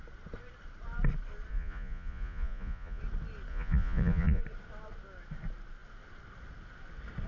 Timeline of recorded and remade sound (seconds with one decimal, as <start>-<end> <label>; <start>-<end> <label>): 0.0-1.5 recorded; 1.5-3.0 remade; 3.0-3.5 recorded; 3.5-4.4 remade; 4.4-7.3 recorded

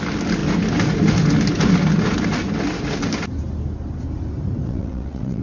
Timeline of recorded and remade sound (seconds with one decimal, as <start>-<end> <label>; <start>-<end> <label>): 0.0-4.6 recorded; 4.6-5.4 remade